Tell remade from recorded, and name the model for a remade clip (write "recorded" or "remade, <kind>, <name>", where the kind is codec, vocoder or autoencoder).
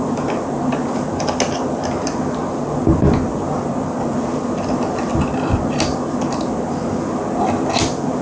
recorded